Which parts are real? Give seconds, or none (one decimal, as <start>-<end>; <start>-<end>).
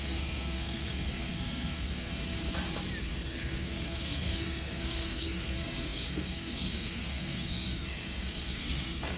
2.1-3.0